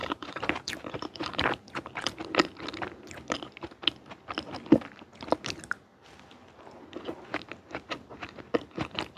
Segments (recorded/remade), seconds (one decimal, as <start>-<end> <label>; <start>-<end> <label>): 0.0-2.2 remade; 2.2-9.2 recorded